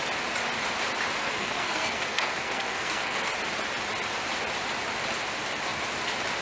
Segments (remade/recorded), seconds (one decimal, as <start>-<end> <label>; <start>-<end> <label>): 0.0-1.2 recorded; 1.2-3.3 remade; 3.3-6.4 recorded